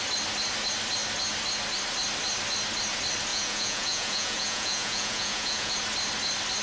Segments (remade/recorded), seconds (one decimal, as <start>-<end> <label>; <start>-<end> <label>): 0.0-3.3 recorded; 3.3-5.7 remade; 5.7-6.6 recorded